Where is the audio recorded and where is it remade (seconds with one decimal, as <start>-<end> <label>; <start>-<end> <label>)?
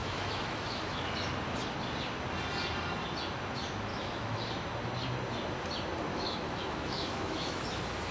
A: 0.0-1.1 remade; 1.1-3.9 recorded; 3.9-4.4 remade; 4.4-6.1 recorded; 6.1-7.6 remade; 7.6-8.1 recorded